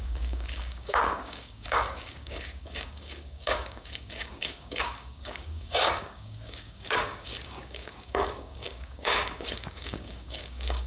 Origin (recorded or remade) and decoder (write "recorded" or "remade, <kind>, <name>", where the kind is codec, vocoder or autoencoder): remade, codec, DAC